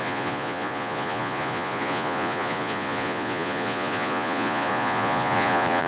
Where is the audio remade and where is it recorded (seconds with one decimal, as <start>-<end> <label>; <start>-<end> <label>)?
0.0-5.9 remade